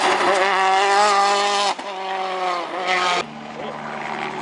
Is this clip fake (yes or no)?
no